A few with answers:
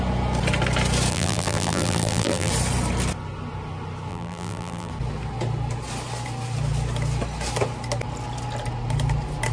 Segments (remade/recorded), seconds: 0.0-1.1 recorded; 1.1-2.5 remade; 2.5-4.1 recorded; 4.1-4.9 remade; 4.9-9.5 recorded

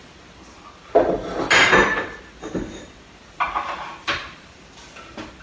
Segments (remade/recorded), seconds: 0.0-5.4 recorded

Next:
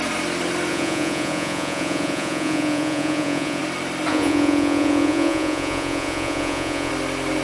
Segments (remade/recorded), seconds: 0.0-0.7 recorded; 0.7-3.6 remade; 3.6-4.1 recorded; 4.1-6.9 remade; 6.9-7.4 recorded

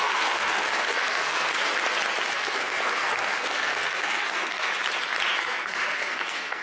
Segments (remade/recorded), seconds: 0.0-1.7 remade; 1.7-2.3 recorded; 2.3-4.7 remade; 4.7-5.4 recorded; 5.4-6.6 remade

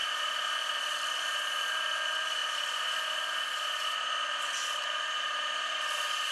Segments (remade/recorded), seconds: 0.0-1.2 remade; 1.2-2.4 recorded; 2.4-3.6 remade; 3.6-6.3 recorded

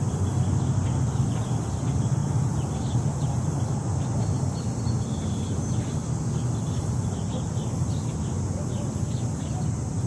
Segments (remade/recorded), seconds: 0.0-10.1 recorded

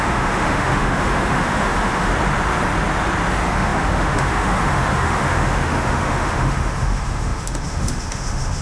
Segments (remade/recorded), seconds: 0.0-2.1 remade; 2.1-3.3 recorded; 3.3-8.6 remade

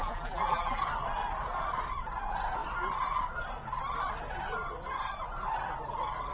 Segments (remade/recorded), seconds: 0.0-0.8 remade; 0.8-6.3 recorded